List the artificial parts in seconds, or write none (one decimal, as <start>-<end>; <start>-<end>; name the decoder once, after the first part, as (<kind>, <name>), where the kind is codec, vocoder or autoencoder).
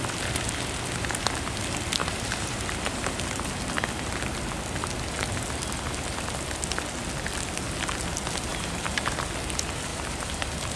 2.0-3.5 (vocoder, BigVGAN v2); 8.5-9.3; 9.9-10.8